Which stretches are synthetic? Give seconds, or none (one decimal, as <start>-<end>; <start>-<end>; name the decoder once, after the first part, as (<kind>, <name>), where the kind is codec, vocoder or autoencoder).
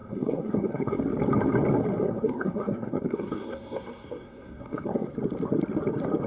0.0-1.0 (codec, SNAC); 2.0-5.1